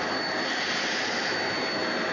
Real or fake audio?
real